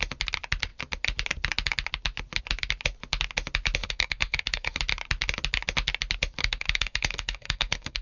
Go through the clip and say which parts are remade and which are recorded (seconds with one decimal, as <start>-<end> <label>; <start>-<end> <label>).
0.0-3.8 recorded; 3.8-4.8 remade; 4.8-6.4 recorded; 6.4-8.0 remade